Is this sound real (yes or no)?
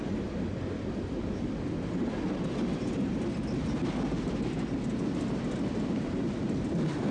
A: yes